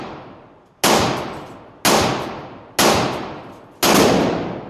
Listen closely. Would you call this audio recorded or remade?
recorded